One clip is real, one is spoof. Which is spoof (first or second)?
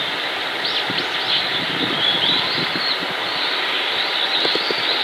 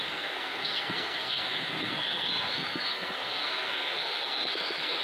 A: second